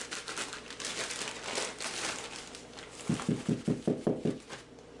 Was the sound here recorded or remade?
recorded